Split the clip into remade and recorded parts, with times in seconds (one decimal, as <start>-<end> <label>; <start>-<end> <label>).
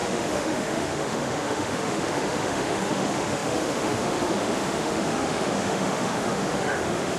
0.0-7.2 remade